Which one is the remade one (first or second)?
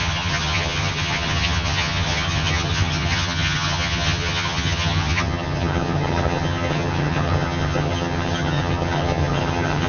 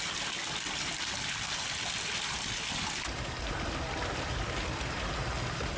first